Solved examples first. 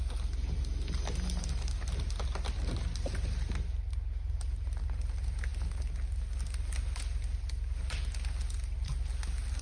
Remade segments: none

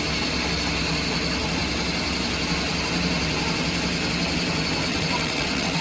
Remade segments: 4.9-5.8 (vocoder, WaveNeXt)

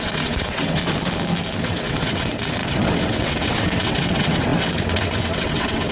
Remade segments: 0.0-0.8 (vocoder, WaveNeXt); 1.6-5.9

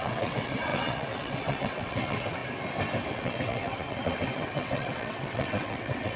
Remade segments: 0.0-2.4 (vocoder, WaveNeXt); 3.1-6.2

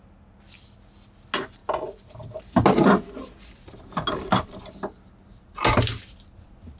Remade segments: none

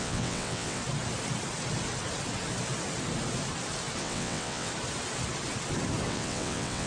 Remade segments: 0.0-0.8 (vocoder, WaveNeXt); 4.0-4.7; 6.1-6.9

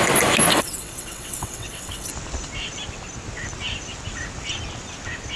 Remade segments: 0.5-2.1 (vocoder, WaveNeXt)

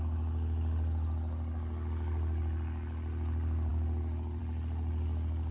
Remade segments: none